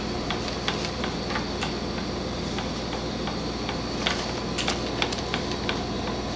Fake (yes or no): no